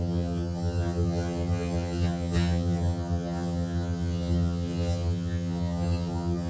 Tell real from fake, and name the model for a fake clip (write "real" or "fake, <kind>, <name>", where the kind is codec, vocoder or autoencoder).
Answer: fake, vocoder, HiFi-GAN